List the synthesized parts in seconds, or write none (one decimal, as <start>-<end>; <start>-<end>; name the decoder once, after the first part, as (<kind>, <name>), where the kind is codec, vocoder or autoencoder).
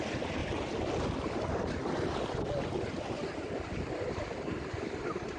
none